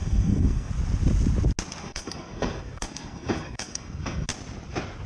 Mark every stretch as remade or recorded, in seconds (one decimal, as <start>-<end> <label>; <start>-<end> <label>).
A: 0.0-0.7 remade; 0.7-1.8 recorded; 1.8-4.3 remade; 4.3-5.1 recorded